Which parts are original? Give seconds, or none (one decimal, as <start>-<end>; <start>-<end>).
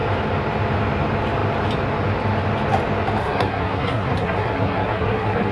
0.0-3.2